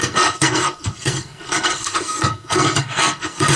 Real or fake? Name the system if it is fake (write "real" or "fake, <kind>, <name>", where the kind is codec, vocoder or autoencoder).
fake, codec, SNAC